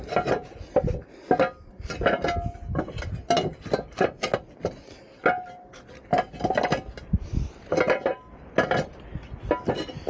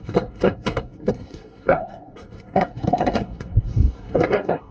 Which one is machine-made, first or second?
second